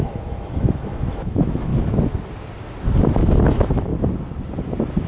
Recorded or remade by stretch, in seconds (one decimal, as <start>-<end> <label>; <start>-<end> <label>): 0.0-1.7 remade; 1.7-3.4 recorded; 3.4-3.9 remade; 3.9-5.1 recorded